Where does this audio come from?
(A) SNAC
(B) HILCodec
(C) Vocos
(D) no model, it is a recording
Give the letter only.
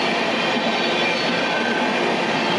D